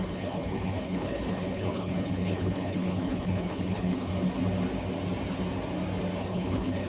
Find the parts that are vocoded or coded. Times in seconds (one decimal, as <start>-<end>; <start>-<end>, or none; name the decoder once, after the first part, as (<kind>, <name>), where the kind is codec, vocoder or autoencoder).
0.0-4.1 (codec, HILCodec); 6.2-6.9